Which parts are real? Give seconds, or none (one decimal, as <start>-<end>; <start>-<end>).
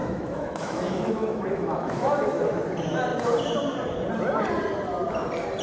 2.6-5.6